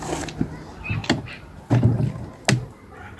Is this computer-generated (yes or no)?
no